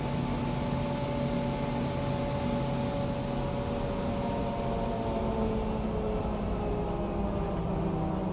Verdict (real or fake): real